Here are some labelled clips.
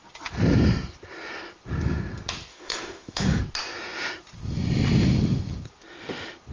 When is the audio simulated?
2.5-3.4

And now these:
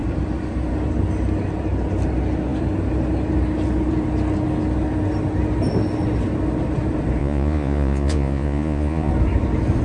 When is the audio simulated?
7.2-9.1

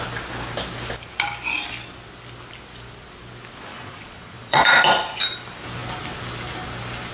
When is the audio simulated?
3.7-4.8

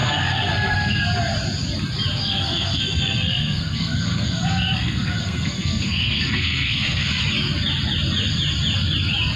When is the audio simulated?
0.0-1.0; 2.2-7.2

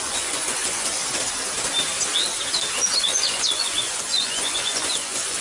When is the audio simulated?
0.0-1.0; 3.0-5.4

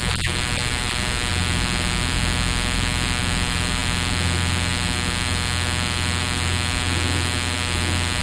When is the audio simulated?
none

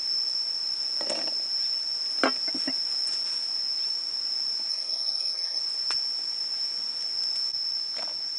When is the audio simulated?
4.7-5.6

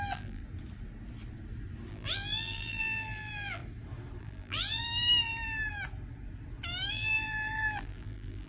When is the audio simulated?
0.0-0.4; 1.9-3.6; 4.2-4.8; 6.9-8.5